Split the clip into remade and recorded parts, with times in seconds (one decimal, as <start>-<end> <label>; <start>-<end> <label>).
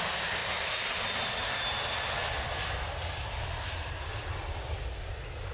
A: 0.0-5.5 recorded